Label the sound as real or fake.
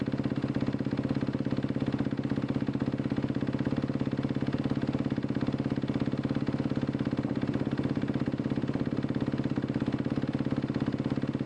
real